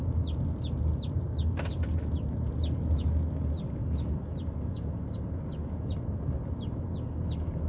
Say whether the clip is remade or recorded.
recorded